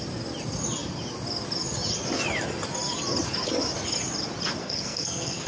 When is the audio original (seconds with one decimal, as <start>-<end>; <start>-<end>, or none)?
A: 0.0-4.6